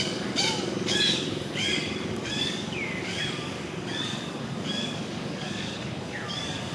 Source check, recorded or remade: remade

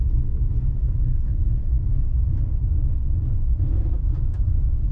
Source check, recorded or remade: recorded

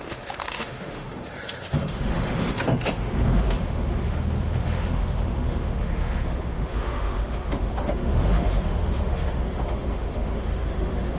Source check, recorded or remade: remade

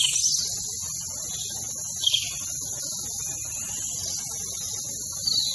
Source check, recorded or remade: recorded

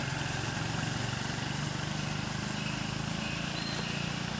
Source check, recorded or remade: recorded